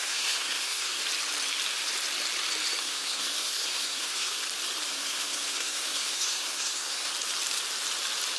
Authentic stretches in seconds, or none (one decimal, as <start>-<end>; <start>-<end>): 1.0-2.8; 4.4-4.9; 7.1-8.4